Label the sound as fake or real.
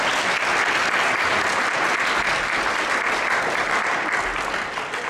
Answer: real